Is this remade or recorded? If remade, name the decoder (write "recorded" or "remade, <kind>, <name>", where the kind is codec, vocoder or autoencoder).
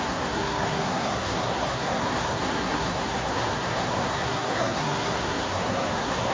remade, codec, SNAC